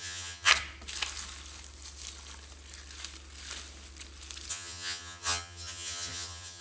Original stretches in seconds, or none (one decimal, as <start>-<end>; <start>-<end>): 0.5-4.5